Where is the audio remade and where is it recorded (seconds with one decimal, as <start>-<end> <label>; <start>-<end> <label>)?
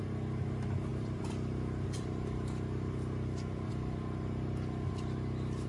0.0-0.9 recorded; 0.9-3.7 remade; 3.7-5.7 recorded